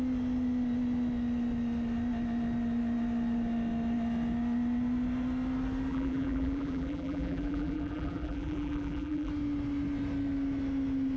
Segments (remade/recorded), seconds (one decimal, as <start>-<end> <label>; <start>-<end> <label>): 0.0-5.9 recorded; 5.9-9.3 remade; 9.3-11.2 recorded